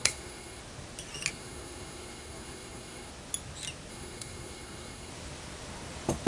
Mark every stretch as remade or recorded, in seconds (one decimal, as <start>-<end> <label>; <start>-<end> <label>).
0.0-0.6 remade; 0.6-1.3 recorded; 1.3-3.1 remade; 3.1-3.9 recorded; 3.9-5.1 remade; 5.1-6.3 recorded

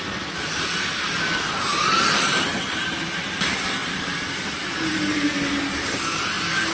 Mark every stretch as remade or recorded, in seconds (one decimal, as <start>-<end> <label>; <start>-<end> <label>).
0.0-6.7 recorded

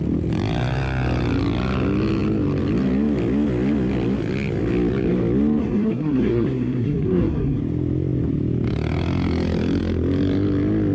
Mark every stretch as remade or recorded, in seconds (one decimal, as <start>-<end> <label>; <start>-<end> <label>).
0.0-5.6 recorded; 5.6-7.6 remade; 7.6-10.9 recorded

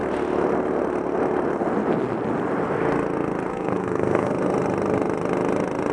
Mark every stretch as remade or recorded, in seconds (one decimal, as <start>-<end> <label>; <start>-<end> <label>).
0.0-3.5 recorded; 3.5-4.3 remade; 4.3-5.9 recorded

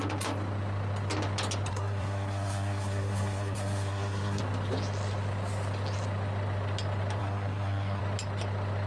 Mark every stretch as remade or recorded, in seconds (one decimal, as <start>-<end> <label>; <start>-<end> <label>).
0.0-1.7 recorded; 1.7-4.4 remade; 4.4-7.2 recorded; 7.2-8.0 remade; 8.0-8.9 recorded

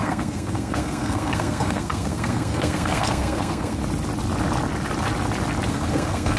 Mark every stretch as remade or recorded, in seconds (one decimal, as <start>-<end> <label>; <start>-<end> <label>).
0.0-3.8 remade; 3.8-5.7 recorded; 5.7-6.4 remade